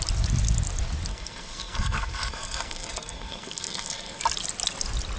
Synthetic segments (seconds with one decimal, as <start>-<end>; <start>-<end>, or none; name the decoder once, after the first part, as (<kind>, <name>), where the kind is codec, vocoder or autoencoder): 1.1-4.2 (codec, SNAC)

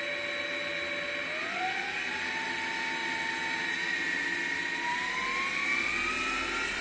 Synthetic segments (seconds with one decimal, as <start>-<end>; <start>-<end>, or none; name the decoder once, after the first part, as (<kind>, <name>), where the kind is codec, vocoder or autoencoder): none

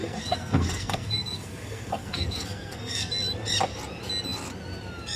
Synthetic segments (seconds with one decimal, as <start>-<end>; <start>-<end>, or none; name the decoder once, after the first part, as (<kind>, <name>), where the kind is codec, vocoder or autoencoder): 0.0-3.1 (codec, SNAC)

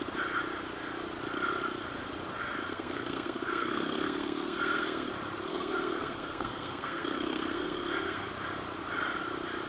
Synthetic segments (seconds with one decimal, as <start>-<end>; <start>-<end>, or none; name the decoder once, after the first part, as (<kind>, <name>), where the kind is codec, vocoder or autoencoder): 2.7-5.1 (codec, SNAC); 5.5-8.3

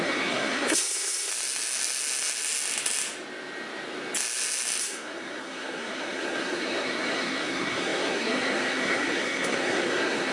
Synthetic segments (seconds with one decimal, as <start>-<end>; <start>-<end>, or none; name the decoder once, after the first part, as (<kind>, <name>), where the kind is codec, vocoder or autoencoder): 0.0-1.3 (codec, SNAC); 4.8-10.3